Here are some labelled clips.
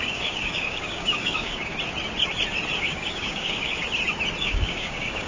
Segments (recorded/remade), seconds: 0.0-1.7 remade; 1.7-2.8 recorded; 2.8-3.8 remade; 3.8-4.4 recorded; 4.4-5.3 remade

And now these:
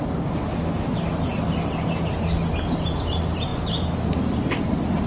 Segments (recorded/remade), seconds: 0.0-5.1 recorded